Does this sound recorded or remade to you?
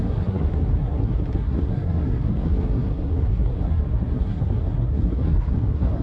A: remade